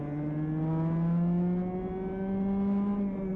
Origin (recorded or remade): recorded